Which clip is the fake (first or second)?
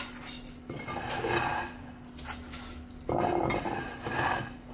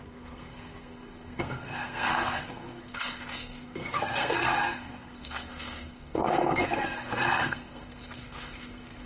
second